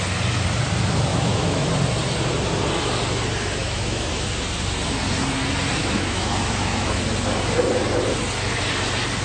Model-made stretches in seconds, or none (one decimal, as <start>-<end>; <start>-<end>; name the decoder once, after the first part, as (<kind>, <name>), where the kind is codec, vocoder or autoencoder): 1.1-1.7 (autoencoder, DAC-VAE); 3.6-4.1; 5.8-7.0

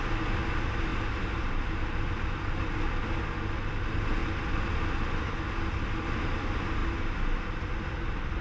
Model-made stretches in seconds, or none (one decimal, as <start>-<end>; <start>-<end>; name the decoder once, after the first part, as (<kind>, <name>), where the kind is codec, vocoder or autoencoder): none

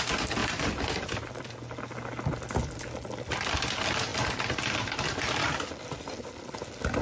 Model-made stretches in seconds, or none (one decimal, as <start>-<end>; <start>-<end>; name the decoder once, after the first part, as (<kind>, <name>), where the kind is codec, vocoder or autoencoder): 0.4-1.5 (vocoder, BigVGAN v2); 4.1-6.5

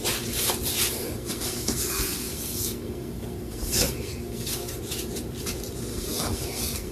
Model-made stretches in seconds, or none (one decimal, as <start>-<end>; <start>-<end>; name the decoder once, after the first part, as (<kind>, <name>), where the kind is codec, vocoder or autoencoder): 1.0-4.8 (codec, SNAC); 5.9-6.9

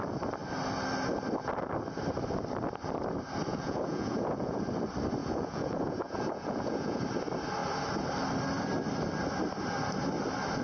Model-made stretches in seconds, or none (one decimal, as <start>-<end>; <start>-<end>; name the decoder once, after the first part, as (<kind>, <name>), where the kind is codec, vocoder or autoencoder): 3.5-4.6 (vocoder, Vocos); 5.2-7.0

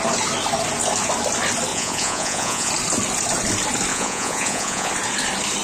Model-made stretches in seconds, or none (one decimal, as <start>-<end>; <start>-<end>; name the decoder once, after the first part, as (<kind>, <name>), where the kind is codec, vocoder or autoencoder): 1.7-2.7 (vocoder, Vocos); 3.9-4.9

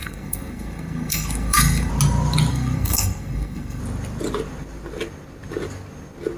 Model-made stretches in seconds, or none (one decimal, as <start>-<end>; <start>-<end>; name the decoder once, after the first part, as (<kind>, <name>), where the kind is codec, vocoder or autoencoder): 0.0-1.9 (codec, SNAC); 2.5-3.8

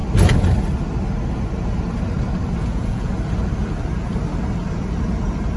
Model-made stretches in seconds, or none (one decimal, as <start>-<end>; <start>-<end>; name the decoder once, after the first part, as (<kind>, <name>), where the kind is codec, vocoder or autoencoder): 2.6-3.1 (vocoder, Vocos)